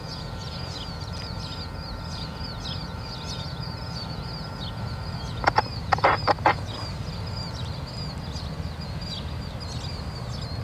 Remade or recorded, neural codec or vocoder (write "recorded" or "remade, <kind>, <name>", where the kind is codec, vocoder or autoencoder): recorded